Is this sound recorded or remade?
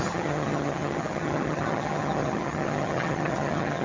remade